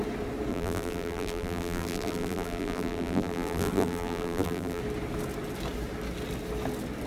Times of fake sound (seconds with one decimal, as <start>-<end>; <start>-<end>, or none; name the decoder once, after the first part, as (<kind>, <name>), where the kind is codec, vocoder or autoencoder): 0.5-4.8 (vocoder, BigVGAN v2)